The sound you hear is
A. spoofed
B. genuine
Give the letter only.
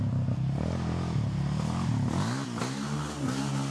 B